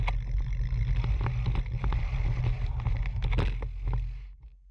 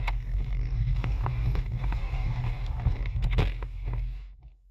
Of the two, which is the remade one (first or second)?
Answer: second